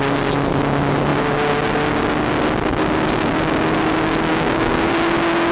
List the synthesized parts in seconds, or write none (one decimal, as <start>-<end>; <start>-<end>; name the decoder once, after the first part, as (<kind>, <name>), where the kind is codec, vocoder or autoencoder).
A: 4.3-4.9 (codec, DAC)